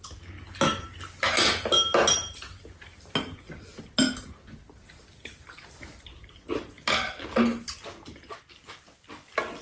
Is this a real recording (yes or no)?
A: yes